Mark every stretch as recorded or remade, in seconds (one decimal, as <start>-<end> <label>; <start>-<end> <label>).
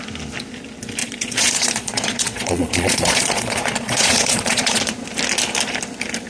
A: 0.0-1.0 recorded; 1.0-4.8 remade; 4.8-6.3 recorded